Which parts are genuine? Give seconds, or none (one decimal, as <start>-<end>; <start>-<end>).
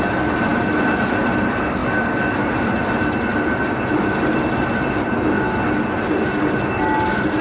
0.0-7.4